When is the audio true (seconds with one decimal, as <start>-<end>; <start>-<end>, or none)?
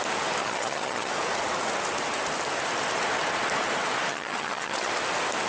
0.0-0.4; 1.1-4.1; 4.9-5.5